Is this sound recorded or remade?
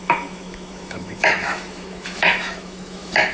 remade